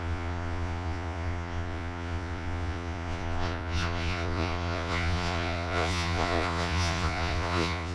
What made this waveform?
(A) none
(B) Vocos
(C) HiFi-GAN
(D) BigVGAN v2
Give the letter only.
B